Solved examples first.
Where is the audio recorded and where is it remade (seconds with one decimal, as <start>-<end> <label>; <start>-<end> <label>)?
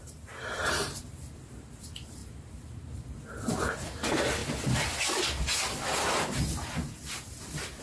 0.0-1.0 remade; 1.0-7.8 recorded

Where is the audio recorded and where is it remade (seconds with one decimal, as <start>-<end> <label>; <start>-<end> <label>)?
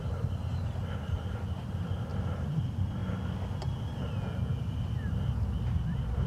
0.0-3.0 remade; 3.0-4.9 recorded; 4.9-6.3 remade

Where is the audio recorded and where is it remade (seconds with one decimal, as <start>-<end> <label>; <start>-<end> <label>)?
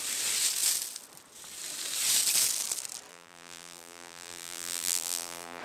0.0-3.1 recorded; 3.1-5.6 remade